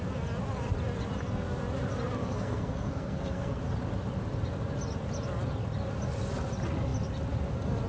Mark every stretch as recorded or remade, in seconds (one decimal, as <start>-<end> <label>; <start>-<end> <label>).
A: 0.0-2.2 recorded; 2.2-3.6 remade; 3.6-7.9 recorded